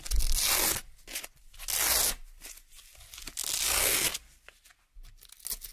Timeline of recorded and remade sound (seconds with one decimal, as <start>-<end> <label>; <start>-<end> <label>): 0.0-5.7 recorded